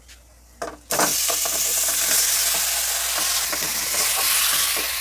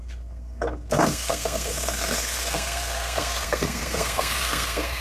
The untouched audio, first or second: first